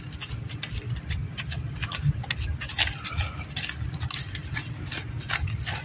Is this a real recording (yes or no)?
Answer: yes